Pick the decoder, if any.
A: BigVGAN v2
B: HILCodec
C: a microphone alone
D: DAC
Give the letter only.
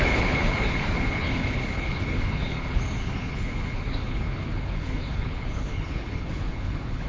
B